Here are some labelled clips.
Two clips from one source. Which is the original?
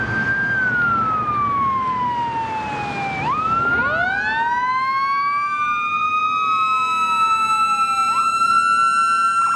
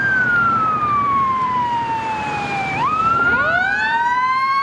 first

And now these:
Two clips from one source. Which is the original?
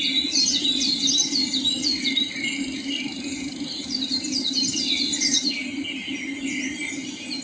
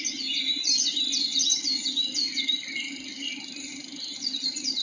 first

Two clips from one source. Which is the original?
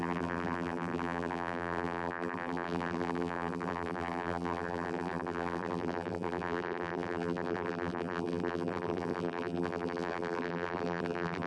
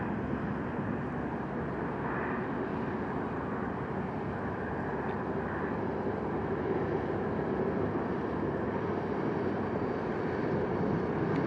second